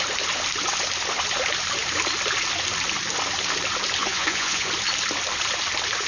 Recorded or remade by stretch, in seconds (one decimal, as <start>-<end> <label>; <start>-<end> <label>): 0.0-4.0 recorded; 4.0-4.7 remade; 4.7-6.1 recorded

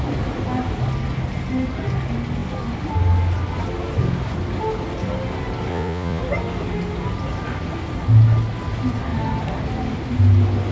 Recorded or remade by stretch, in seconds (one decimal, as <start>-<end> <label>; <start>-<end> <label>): 0.0-5.7 recorded; 5.7-6.2 remade; 6.2-10.7 recorded

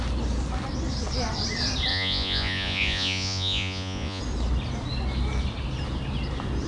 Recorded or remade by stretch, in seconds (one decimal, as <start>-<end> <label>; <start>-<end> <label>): 0.0-1.9 recorded; 1.9-4.2 remade; 4.2-6.7 recorded